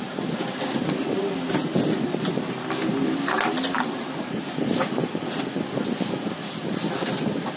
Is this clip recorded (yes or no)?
yes